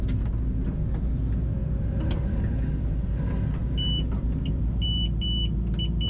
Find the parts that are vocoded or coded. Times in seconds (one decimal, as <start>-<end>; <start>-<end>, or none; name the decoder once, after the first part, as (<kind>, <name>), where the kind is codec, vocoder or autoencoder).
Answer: none

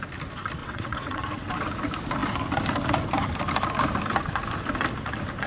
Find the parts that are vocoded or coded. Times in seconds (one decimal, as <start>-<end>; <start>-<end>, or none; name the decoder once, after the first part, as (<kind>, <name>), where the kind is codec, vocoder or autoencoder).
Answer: 0.6-1.7 (vocoder, WaveNeXt)

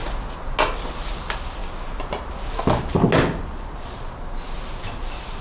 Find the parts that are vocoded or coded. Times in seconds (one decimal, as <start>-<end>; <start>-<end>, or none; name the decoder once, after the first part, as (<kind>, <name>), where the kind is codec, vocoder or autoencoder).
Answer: none

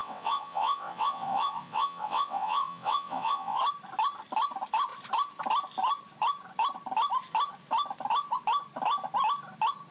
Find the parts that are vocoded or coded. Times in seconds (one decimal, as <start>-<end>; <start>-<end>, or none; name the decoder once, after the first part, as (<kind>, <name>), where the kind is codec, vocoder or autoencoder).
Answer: 0.0-3.6 (vocoder, WaveNeXt)